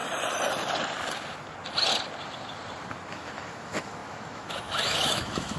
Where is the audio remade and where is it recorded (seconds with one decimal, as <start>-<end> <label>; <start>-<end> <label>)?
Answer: 0.0-3.1 recorded; 3.1-5.6 remade